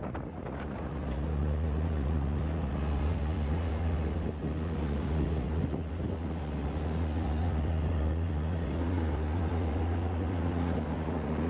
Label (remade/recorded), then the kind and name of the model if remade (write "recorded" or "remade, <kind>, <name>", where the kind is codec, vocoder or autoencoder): remade, vocoder, Vocos